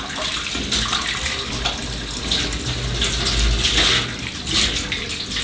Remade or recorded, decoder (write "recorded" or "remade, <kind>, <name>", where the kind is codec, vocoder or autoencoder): recorded